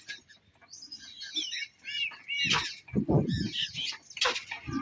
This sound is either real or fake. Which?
real